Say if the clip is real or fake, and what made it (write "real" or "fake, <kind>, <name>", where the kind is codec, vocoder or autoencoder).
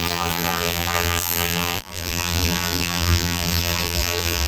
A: fake, vocoder, BigVGAN v2